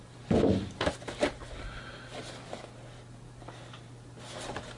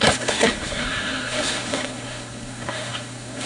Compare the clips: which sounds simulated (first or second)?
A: second